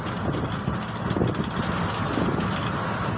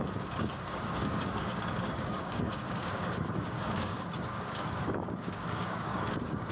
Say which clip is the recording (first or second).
first